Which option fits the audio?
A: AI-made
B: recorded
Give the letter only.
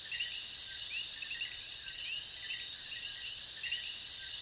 B